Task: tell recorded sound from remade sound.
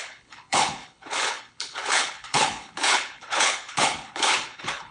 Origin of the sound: remade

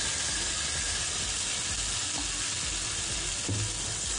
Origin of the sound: recorded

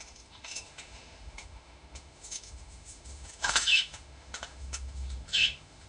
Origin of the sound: remade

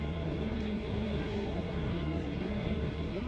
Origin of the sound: remade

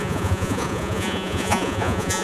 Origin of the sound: remade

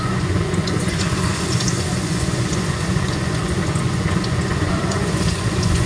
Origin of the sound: remade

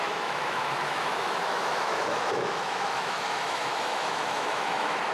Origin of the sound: remade